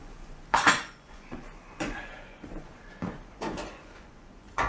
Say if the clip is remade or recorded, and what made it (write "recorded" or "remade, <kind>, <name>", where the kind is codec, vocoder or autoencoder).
remade, vocoder, Vocos